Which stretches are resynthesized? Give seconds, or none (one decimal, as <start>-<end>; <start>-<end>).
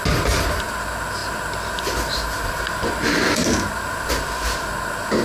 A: none